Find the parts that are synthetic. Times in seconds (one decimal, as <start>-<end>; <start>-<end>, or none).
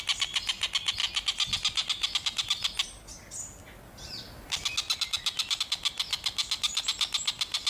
none